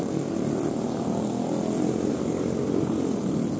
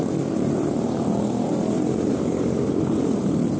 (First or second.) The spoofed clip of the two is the second